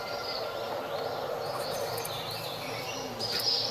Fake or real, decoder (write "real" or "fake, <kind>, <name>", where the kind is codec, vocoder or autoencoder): real